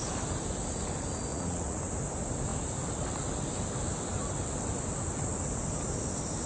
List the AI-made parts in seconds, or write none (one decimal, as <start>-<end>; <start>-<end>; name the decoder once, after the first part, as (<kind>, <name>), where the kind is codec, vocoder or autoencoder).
1.3-1.8 (vocoder, Vocos)